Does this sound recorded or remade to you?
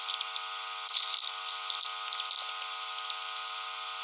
recorded